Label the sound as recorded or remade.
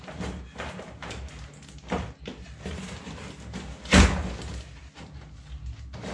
recorded